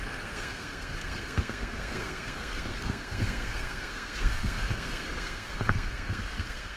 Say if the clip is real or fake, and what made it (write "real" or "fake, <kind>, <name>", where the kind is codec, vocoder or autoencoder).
fake, codec, SNAC